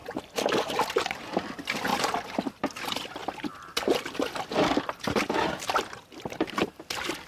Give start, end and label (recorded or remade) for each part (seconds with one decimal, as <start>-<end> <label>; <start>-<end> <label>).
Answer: 0.0-1.0 recorded; 1.0-3.2 remade; 3.2-3.8 recorded; 3.8-7.3 remade

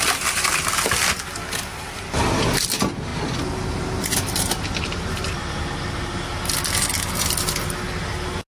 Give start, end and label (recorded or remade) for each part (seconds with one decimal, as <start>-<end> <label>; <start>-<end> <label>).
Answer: 0.0-8.5 recorded

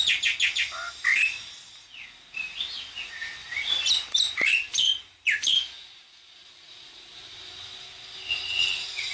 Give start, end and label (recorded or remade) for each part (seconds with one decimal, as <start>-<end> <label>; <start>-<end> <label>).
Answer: 0.0-1.1 recorded; 1.1-1.6 remade; 1.6-3.4 recorded; 3.4-6.5 remade; 6.5-9.1 recorded

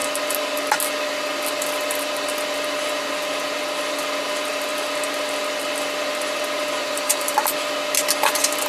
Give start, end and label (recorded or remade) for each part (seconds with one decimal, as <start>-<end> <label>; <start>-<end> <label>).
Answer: 0.0-6.8 recorded; 6.8-7.5 remade; 7.5-8.7 recorded

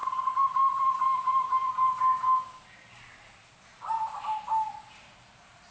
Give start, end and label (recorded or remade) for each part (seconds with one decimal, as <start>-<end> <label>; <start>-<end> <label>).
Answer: 0.0-0.8 recorded; 0.8-1.6 remade; 1.6-5.0 recorded; 5.0-5.7 remade

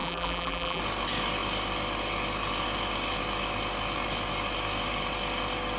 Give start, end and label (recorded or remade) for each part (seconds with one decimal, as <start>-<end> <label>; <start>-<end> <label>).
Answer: 0.0-0.8 remade; 0.8-5.8 recorded

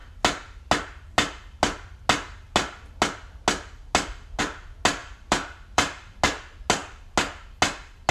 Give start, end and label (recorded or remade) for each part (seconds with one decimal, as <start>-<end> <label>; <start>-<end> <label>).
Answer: 0.0-5.0 recorded; 5.0-6.2 remade; 6.2-8.1 recorded

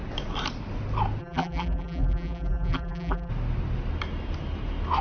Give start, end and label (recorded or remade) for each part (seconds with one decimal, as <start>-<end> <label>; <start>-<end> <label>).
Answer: 0.0-1.2 recorded; 1.2-3.3 remade; 3.3-5.0 recorded